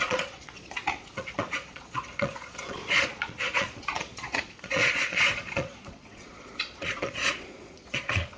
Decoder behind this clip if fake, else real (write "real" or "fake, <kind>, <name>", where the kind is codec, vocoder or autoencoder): fake, vocoder, Vocos